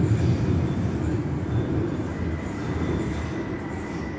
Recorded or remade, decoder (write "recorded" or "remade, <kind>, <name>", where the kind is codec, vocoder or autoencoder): recorded